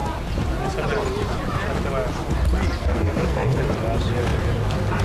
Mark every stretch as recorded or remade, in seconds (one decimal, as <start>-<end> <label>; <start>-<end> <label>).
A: 0.0-2.8 recorded; 2.8-3.6 remade; 3.6-5.0 recorded